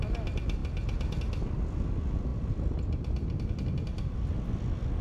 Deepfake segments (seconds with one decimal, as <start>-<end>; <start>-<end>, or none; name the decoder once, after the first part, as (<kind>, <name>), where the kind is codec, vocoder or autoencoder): none